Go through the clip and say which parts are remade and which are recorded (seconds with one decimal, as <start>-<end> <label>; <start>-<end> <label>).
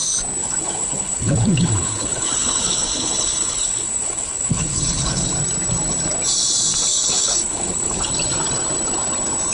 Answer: 0.0-0.4 recorded; 0.4-5.3 remade; 5.3-6.9 recorded; 6.9-8.1 remade; 8.1-9.5 recorded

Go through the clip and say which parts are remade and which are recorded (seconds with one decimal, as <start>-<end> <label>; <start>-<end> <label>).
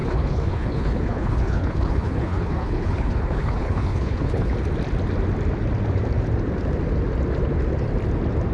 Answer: 0.0-4.5 remade; 4.5-8.5 recorded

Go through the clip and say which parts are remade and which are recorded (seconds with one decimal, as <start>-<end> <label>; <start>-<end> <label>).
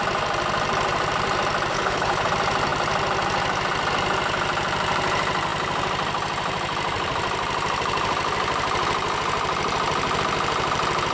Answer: 0.0-1.7 recorded; 1.7-2.3 remade; 2.3-11.1 recorded